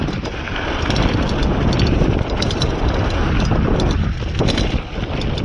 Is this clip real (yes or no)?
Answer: yes